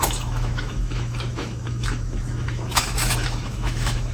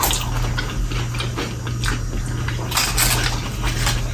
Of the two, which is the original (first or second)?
second